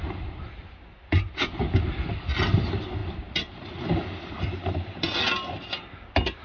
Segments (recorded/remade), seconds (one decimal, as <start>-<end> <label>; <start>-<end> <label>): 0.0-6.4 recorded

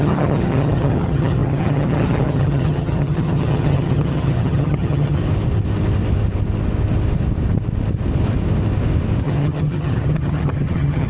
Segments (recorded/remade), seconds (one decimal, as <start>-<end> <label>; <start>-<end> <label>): 0.0-5.2 remade; 5.2-9.2 recorded; 9.2-11.1 remade

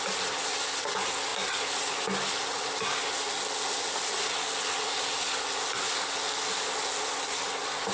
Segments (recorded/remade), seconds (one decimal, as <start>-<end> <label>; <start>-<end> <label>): 0.0-7.9 recorded